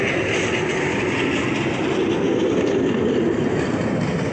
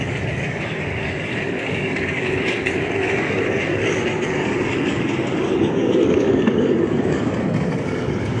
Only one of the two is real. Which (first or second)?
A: first